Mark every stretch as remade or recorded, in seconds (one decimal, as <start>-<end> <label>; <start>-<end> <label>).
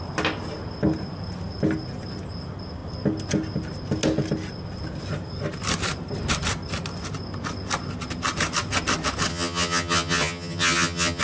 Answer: 0.0-9.3 recorded; 9.3-11.2 remade